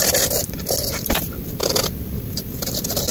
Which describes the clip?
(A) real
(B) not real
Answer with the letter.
B